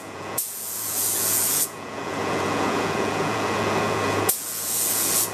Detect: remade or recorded remade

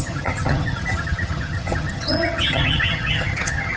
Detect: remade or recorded remade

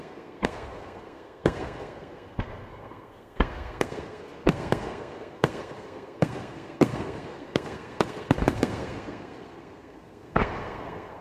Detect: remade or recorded remade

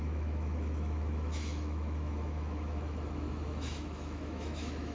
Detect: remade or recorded remade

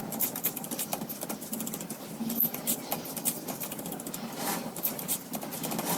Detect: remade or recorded remade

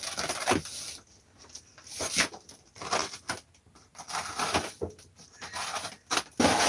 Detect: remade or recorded recorded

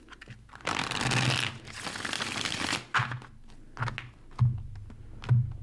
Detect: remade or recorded recorded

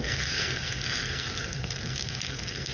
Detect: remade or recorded remade